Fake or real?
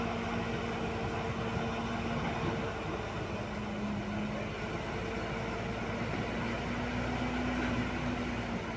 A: real